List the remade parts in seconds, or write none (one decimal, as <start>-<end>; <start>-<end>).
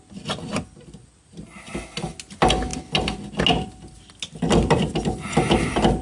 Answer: none